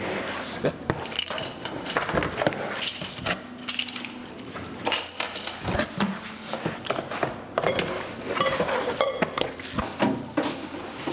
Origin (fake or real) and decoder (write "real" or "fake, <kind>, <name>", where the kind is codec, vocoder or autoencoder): real